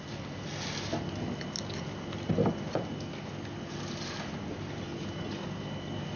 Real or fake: real